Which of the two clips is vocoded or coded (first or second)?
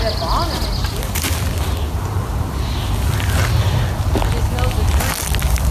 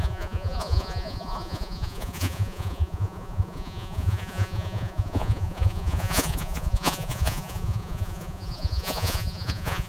second